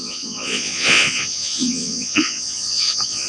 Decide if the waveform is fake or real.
fake